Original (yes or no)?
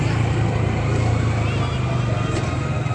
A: yes